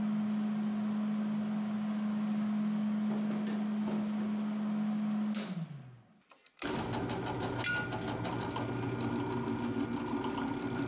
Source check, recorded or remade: recorded